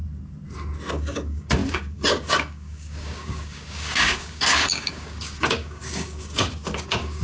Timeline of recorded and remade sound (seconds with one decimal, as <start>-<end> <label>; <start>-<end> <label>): 0.0-0.9 recorded; 0.9-7.2 remade